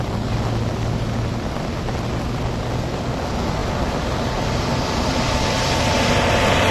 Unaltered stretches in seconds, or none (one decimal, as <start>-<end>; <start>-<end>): 0.0-6.7